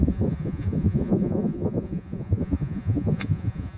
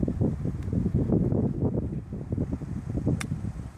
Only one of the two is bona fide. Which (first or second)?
second